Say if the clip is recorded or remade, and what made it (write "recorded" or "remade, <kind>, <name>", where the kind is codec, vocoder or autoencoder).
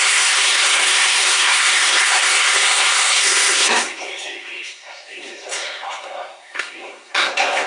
remade, codec, SNAC